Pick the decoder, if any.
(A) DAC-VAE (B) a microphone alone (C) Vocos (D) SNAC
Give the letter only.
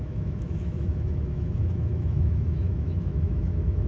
A